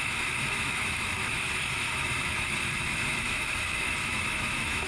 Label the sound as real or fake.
fake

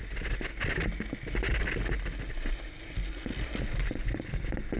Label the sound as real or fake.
real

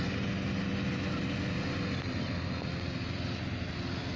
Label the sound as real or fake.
real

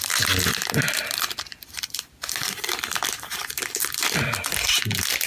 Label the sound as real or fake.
real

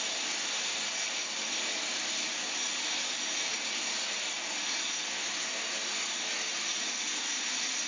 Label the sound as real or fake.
real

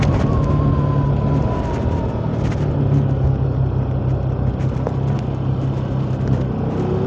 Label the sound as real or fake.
real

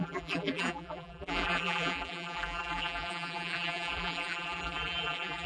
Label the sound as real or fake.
fake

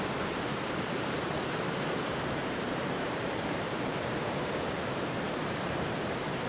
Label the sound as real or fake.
fake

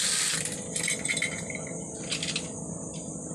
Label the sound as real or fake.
real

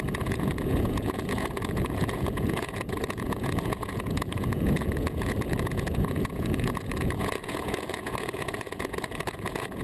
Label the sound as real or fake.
fake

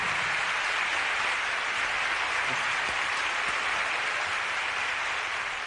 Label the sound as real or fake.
real